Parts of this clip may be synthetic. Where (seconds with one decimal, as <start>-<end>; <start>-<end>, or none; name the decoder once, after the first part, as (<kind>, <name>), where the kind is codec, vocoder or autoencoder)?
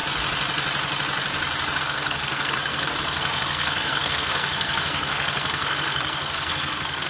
1.8-7.1 (codec, SNAC)